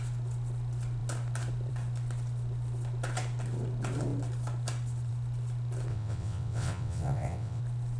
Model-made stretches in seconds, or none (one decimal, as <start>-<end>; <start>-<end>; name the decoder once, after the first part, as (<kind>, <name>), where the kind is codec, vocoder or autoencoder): 5.9-7.6 (vocoder, WaveNeXt)